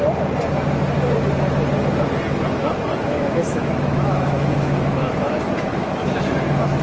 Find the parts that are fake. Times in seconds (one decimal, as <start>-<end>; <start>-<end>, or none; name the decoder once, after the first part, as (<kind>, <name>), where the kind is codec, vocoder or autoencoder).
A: 2.9-6.8 (autoencoder, DAC-VAE)